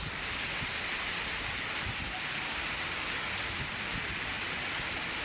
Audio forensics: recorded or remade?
recorded